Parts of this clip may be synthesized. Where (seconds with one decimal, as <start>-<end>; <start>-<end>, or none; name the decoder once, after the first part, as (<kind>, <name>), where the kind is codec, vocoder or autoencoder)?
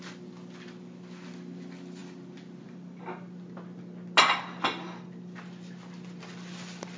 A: none